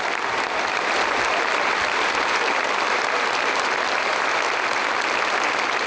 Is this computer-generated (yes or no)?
no